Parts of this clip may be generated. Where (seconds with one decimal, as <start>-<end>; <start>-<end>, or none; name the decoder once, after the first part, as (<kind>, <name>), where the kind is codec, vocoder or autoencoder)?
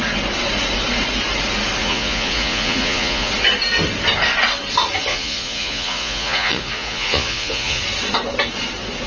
1.8-3.3 (vocoder, Vocos); 5.1-7.8